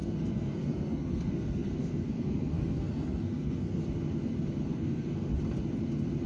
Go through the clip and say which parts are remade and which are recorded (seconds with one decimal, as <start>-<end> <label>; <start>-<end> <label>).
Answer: 0.0-3.8 remade; 3.8-4.6 recorded; 4.6-5.3 remade; 5.3-6.3 recorded